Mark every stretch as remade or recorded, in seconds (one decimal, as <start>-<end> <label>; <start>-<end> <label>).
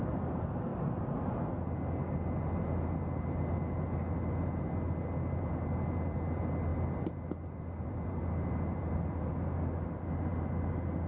0.0-6.7 recorded; 6.7-9.3 remade; 9.3-11.1 recorded